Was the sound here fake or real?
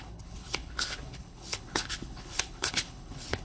fake